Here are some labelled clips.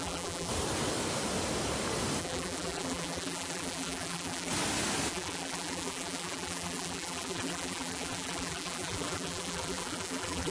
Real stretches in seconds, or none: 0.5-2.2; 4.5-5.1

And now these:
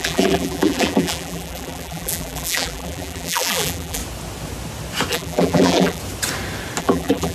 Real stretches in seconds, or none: 4.0-5.1; 6.0-6.8

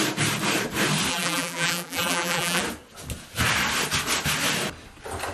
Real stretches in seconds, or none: 0.0-1.1; 2.6-5.3

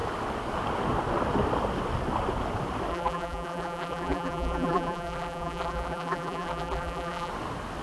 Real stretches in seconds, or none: 0.0-2.9; 7.3-7.8

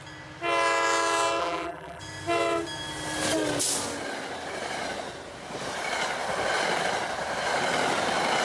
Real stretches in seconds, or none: 0.0-1.4; 2.0-8.4

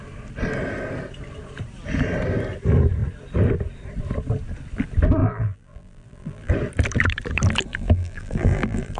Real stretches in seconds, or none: 0.0-5.2; 6.5-7.7